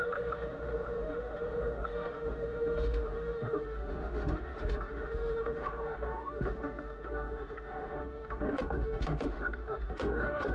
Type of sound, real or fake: fake